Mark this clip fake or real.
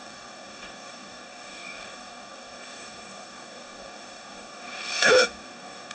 fake